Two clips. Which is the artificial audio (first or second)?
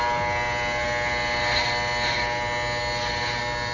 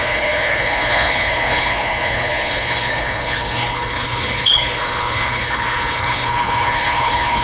second